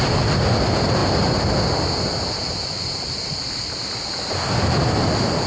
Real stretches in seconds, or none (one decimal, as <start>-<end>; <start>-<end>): 0.0-5.5